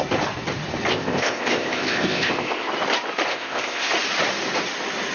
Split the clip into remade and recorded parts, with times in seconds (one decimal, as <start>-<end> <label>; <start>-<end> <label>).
0.0-0.9 recorded; 0.9-2.7 remade; 2.7-3.3 recorded; 3.3-3.9 remade; 3.9-5.1 recorded